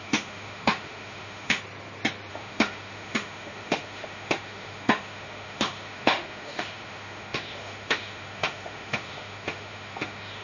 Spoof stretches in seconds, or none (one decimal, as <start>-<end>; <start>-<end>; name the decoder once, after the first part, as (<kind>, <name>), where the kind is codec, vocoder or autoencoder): 0.0-1.6 (autoencoder, DAC-VAE); 2.3-10.4

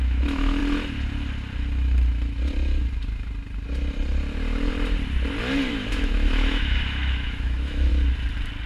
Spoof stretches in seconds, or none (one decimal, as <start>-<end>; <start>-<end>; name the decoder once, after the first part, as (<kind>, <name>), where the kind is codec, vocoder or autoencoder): 0.0-0.6 (autoencoder, DAC-VAE); 5.7-7.9